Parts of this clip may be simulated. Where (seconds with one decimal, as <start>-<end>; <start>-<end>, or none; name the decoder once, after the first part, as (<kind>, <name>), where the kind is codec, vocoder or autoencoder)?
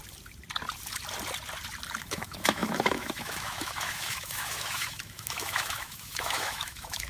2.0-7.1 (autoencoder, DAC-VAE)